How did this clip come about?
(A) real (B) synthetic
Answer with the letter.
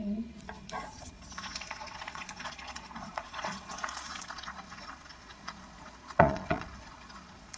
B